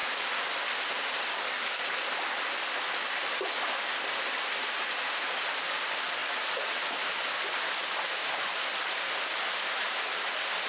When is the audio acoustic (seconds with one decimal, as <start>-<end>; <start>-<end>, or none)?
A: 0.0-1.3; 1.8-10.7